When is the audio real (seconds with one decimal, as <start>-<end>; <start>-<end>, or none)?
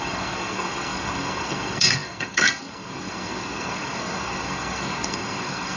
none